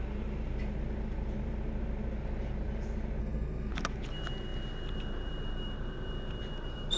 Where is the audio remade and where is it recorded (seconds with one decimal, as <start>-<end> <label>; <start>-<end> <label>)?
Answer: 0.0-3.2 recorded; 3.2-3.7 remade; 3.7-7.0 recorded

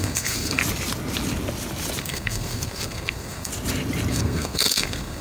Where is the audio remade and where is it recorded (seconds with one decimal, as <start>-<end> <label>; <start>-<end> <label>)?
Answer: 0.0-0.6 remade; 0.6-2.0 recorded; 2.0-3.5 remade; 3.5-4.1 recorded; 4.1-5.2 remade

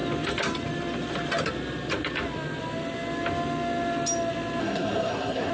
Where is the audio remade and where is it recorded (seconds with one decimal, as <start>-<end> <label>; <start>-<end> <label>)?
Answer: 0.0-4.6 recorded; 4.6-5.5 remade

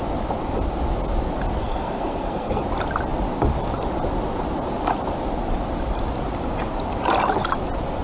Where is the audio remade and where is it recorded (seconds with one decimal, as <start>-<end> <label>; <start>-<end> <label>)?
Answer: 0.0-1.6 recorded; 1.6-2.6 remade; 2.6-8.0 recorded

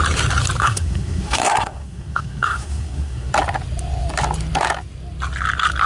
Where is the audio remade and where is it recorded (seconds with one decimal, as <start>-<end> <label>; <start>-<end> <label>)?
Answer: 0.0-0.6 recorded; 0.6-3.3 remade; 3.3-5.9 recorded